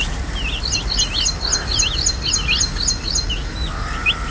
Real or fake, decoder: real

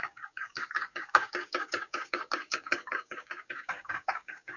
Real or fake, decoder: fake, codec, DAC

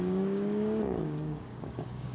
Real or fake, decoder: fake, codec, DAC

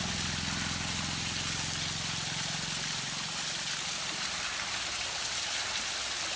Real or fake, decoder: real